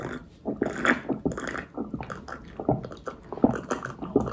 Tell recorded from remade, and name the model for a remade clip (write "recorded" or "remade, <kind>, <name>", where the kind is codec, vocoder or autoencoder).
recorded